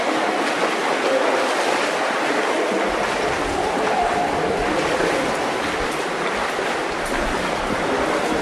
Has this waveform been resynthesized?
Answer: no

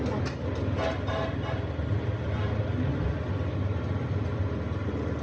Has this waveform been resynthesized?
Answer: no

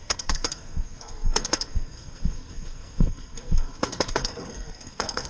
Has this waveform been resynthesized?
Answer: yes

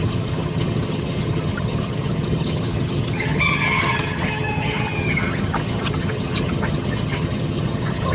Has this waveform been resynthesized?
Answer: yes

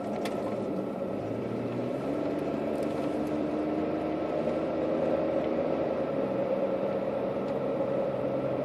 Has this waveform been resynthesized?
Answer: yes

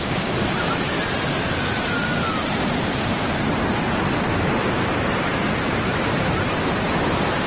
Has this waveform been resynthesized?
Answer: yes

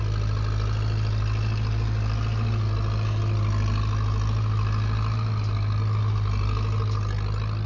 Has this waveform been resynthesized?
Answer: no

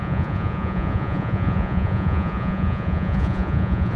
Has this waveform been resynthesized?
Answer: yes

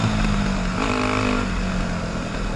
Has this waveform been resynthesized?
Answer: no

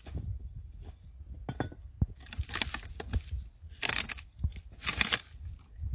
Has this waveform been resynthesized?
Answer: no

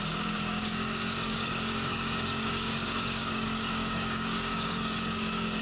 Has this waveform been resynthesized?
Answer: yes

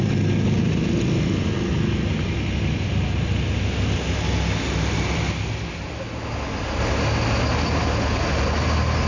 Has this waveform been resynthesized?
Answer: no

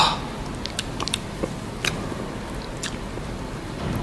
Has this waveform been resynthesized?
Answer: no